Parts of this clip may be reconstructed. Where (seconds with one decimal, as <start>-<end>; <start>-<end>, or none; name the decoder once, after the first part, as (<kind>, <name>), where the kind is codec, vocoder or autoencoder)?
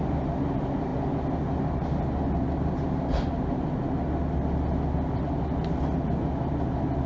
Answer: none